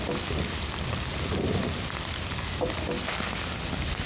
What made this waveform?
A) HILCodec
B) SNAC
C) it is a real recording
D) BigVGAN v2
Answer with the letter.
C